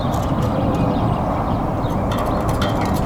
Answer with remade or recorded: recorded